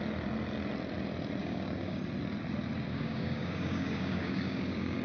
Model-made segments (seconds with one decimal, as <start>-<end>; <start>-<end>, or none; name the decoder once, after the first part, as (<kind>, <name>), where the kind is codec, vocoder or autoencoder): 1.4-2.0 (codec, DAC); 2.9-5.0